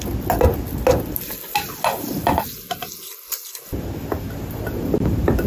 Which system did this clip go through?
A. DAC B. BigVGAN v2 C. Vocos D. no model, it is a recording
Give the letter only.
D